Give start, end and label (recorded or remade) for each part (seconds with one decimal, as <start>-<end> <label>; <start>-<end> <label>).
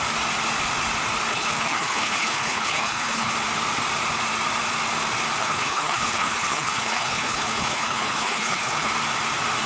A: 0.0-1.3 recorded; 1.3-3.3 remade; 3.3-5.4 recorded; 5.4-8.9 remade; 8.9-9.7 recorded